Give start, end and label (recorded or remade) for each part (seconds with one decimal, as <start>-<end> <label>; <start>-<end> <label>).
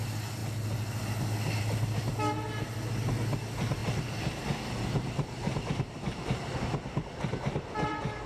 0.0-3.8 recorded; 3.8-8.3 remade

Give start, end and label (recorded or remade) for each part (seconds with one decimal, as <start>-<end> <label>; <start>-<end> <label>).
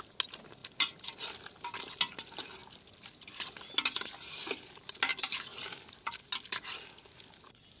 0.0-5.1 recorded; 5.1-5.8 remade; 5.8-7.8 recorded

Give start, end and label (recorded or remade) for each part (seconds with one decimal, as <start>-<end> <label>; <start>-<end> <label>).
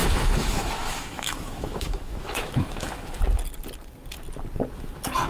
0.0-3.2 remade; 3.2-5.3 recorded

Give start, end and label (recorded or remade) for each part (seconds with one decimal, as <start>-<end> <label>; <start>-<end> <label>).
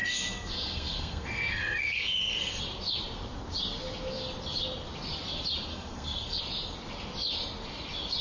0.0-2.6 remade; 2.6-5.7 recorded; 5.7-6.4 remade; 6.4-8.2 recorded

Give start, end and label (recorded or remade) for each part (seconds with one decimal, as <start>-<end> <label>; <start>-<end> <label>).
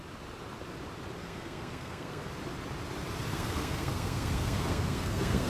0.0-1.2 recorded; 1.2-2.3 remade; 2.3-3.3 recorded; 3.3-5.5 remade